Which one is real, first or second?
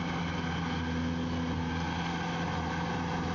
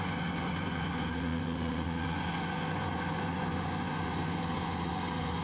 first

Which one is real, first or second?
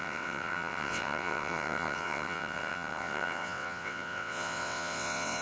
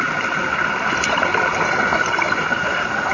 second